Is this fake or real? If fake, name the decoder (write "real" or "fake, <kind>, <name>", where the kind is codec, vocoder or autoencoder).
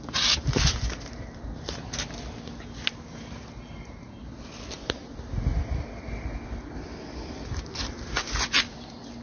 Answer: real